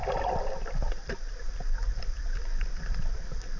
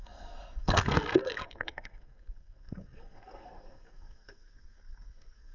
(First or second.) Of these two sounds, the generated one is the second